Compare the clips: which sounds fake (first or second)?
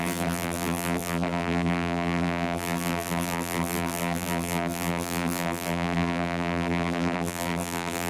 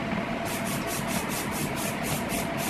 first